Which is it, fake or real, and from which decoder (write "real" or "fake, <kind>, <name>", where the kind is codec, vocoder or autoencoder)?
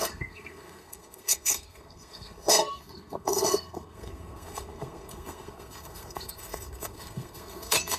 fake, codec, SNAC